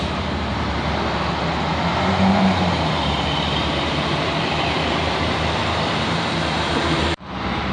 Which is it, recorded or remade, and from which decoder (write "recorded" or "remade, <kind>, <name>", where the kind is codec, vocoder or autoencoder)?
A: remade, vocoder, BigVGAN v2